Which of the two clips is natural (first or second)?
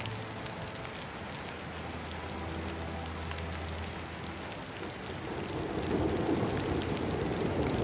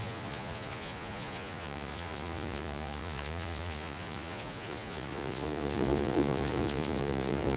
first